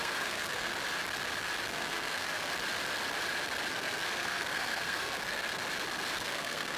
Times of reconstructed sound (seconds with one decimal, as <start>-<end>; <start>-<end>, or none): 0.0-0.7; 1.7-2.5; 3.7-5.5; 6.1-6.8